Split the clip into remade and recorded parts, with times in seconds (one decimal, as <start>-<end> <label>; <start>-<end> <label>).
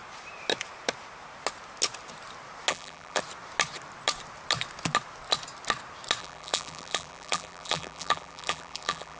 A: 0.0-2.7 recorded; 2.7-3.2 remade; 3.2-6.2 recorded; 6.2-9.2 remade